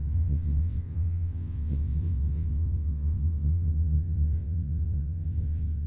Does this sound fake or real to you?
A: fake